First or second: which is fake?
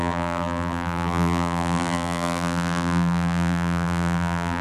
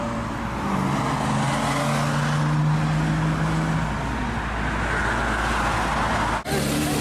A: first